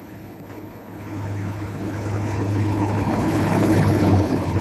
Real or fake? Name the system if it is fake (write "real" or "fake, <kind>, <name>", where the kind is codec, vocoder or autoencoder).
fake, codec, HILCodec